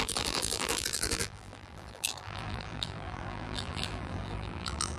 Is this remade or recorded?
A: remade